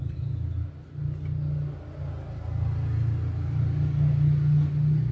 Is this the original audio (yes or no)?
yes